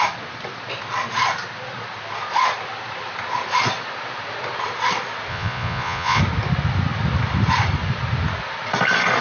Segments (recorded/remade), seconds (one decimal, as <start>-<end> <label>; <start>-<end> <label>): 0.0-5.3 recorded; 5.3-6.2 remade; 6.2-9.2 recorded